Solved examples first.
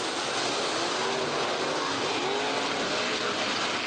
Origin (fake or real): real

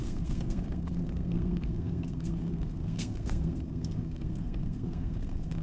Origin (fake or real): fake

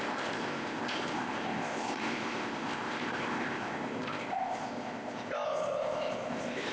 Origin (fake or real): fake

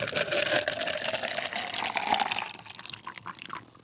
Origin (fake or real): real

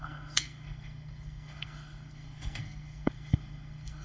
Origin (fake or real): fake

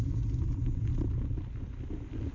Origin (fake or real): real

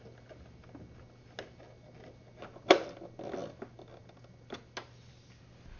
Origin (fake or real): real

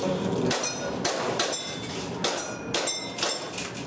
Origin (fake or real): real